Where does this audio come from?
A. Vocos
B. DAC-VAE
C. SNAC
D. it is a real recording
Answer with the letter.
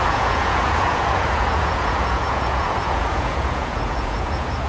A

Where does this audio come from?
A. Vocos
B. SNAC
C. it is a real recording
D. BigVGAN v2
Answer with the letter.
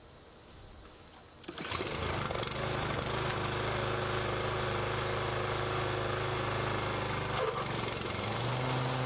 C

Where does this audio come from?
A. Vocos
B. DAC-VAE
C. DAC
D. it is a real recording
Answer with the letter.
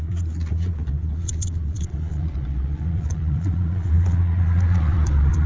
A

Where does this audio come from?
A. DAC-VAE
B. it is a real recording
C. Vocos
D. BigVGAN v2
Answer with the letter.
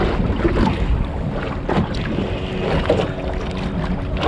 B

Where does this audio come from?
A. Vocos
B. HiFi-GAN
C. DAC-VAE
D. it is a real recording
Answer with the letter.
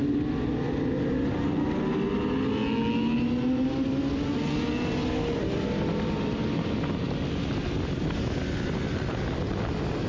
D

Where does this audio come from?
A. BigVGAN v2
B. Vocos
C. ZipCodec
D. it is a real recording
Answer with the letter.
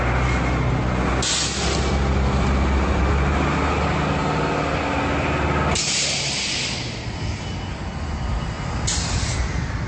D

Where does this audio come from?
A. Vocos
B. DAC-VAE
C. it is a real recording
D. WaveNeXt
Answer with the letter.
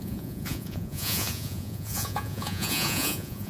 A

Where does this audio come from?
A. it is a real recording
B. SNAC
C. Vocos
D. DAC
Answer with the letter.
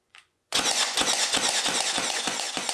C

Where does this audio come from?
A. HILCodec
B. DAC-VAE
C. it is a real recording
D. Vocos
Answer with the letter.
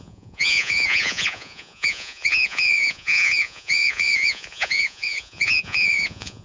D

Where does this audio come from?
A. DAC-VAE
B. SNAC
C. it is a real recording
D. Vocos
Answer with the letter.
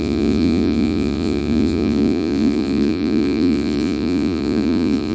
D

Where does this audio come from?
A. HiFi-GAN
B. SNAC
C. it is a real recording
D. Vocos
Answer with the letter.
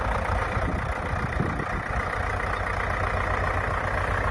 C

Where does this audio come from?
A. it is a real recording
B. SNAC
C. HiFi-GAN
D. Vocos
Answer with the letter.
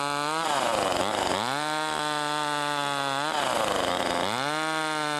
A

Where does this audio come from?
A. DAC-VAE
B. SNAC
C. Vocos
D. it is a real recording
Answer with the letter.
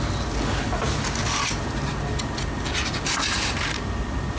D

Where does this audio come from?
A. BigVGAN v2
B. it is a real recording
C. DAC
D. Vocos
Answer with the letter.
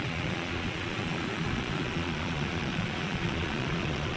D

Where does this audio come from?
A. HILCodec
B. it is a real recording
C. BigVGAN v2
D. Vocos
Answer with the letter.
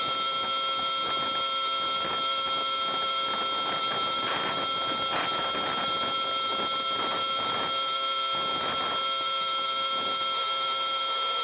B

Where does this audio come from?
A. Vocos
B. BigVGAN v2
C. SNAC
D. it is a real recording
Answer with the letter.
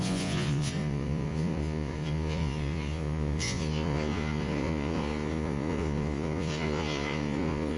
A